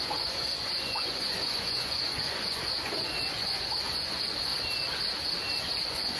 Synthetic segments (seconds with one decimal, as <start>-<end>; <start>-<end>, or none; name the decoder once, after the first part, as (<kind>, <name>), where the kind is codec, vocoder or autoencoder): 0.0-4.5 (vocoder, Vocos); 5.6-6.2